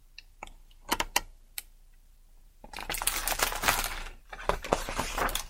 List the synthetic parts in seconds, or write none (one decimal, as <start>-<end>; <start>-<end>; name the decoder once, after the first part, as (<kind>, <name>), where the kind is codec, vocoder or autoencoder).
2.4-2.8 (vocoder, BigVGAN v2); 4.2-5.5